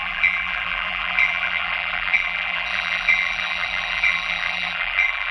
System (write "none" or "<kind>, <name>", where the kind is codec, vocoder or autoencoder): vocoder, BigVGAN v2